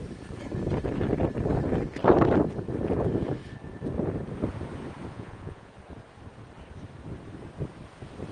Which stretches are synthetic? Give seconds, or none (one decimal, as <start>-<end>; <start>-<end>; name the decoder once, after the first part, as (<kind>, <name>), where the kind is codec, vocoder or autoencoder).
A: 5.1-5.7 (vocoder, Vocos)